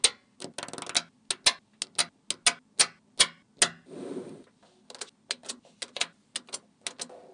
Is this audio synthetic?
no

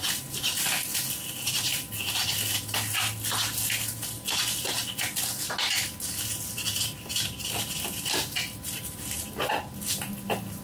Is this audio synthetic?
no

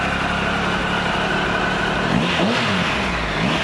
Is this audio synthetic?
no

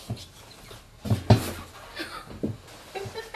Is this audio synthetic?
no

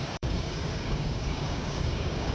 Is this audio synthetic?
yes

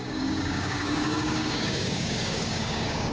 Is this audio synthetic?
yes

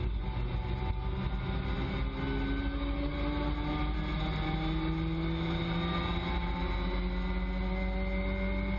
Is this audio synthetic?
no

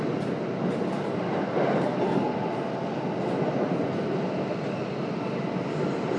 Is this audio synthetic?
no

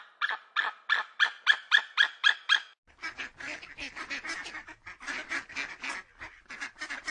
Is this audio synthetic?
no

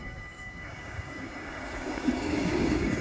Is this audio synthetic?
yes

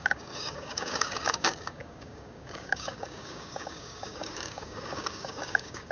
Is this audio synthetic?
yes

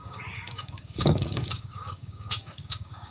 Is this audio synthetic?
yes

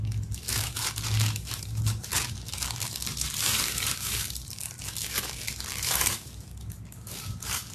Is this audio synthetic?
yes